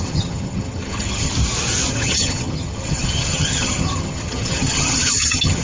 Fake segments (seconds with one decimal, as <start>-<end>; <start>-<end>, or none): 0.0-1.3; 1.9-5.6